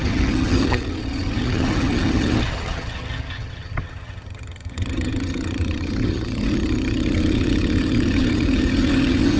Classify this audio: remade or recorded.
remade